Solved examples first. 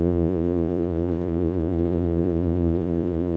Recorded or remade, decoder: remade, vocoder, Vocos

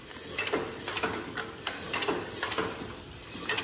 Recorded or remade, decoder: recorded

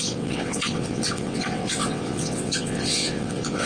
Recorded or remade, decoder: remade, vocoder, WaveNeXt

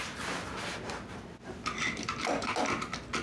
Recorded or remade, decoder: recorded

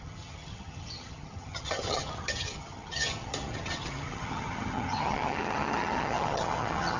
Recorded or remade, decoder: remade, vocoder, HiFi-GAN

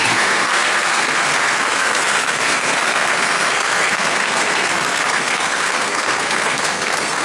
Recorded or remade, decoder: remade, codec, SNAC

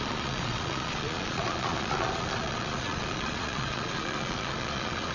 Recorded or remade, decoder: remade, vocoder, Vocos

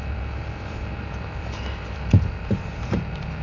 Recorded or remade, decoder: remade, vocoder, BigVGAN v2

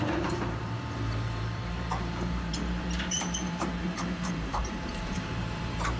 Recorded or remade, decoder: remade, vocoder, BigVGAN v2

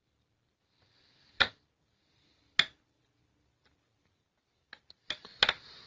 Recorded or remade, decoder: recorded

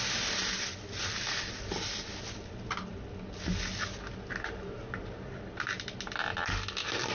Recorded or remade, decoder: recorded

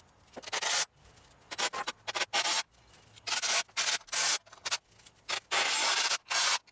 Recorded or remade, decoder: recorded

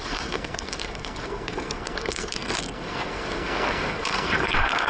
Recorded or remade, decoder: remade, codec, SNAC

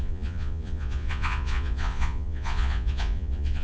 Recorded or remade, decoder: remade, vocoder, Vocos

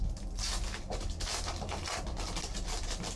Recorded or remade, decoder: recorded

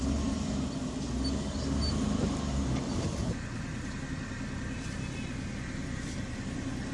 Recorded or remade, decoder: recorded